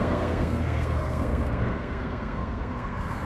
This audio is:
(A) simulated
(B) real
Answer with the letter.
A